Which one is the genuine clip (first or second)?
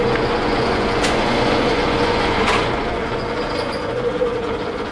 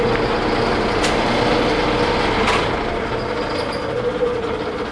second